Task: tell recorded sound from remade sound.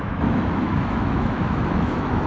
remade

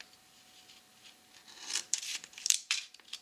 remade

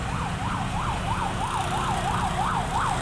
recorded